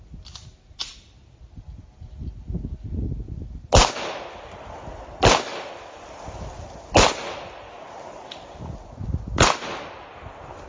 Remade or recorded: recorded